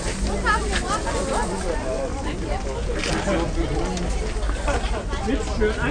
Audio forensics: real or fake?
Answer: real